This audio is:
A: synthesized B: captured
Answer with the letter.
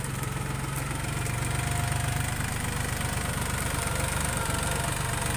B